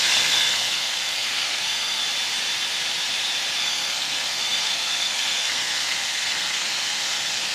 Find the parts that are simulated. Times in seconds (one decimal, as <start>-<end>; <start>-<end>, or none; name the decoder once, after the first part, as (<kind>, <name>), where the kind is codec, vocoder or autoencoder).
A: 0.0-2.0 (codec, SNAC); 3.6-7.5